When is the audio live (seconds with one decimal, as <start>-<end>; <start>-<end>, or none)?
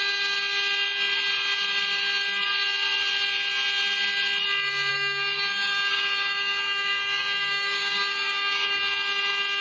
0.0-4.9; 8.8-9.6